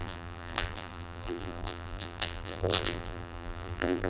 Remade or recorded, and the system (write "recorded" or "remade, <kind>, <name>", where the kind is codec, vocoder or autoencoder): remade, vocoder, BigVGAN v2